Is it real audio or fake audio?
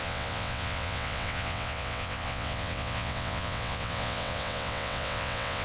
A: fake